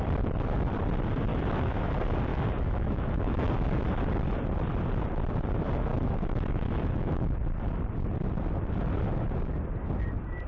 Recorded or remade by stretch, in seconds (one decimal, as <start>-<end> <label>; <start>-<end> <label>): 0.0-1.3 recorded; 1.3-1.9 remade; 1.9-2.3 recorded; 2.3-3.5 remade; 3.5-5.9 recorded; 5.9-7.4 remade; 7.4-10.5 recorded